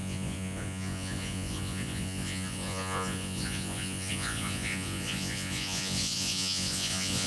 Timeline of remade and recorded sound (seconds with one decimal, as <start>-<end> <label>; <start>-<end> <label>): 0.0-7.3 remade

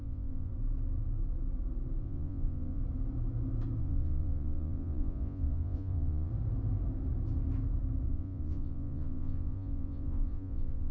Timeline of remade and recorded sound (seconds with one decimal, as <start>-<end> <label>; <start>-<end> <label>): 0.0-0.5 remade; 0.5-2.0 recorded; 2.0-2.8 remade; 2.8-3.8 recorded; 3.8-6.3 remade; 6.3-8.1 recorded; 8.1-10.9 remade